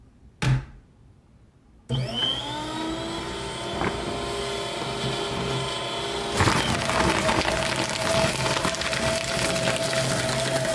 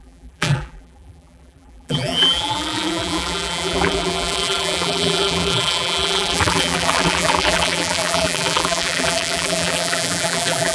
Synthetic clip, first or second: second